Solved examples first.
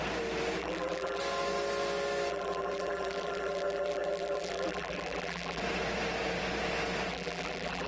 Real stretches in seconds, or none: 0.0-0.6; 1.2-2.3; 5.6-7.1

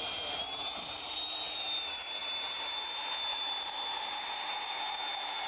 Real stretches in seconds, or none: 0.0-5.5